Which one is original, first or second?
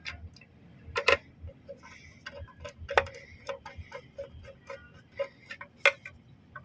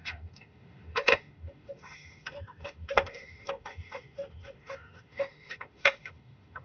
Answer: first